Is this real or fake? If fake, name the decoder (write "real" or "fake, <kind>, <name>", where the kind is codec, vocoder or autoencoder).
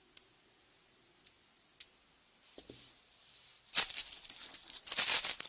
real